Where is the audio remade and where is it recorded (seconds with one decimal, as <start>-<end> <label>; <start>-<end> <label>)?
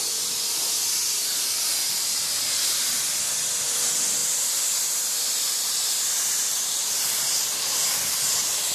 0.0-8.7 remade